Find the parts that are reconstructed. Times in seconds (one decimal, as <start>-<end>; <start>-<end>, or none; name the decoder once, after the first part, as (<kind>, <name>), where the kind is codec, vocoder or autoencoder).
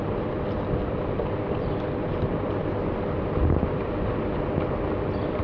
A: none